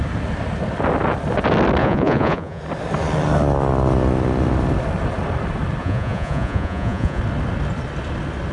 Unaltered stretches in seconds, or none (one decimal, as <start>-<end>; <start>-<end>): 0.0-1.8; 2.6-5.8; 7.2-8.5